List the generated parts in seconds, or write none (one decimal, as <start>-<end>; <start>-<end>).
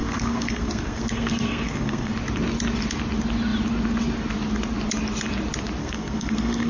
0.0-2.1; 5.8-6.7